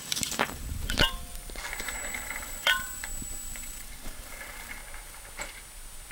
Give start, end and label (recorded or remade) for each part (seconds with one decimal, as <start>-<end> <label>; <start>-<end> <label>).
0.0-1.3 remade; 1.3-1.8 recorded; 1.8-4.8 remade; 4.8-6.1 recorded